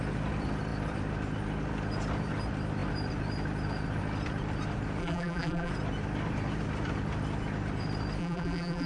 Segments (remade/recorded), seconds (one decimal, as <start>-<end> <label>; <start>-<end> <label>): 0.0-5.0 recorded; 5.0-5.7 remade; 5.7-8.2 recorded; 8.2-8.9 remade